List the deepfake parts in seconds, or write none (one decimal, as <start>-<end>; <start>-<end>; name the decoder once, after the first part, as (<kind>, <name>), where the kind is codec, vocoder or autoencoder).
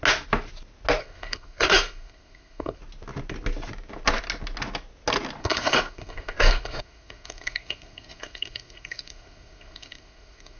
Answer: 1.0-2.8 (codec, SNAC); 5.4-10.6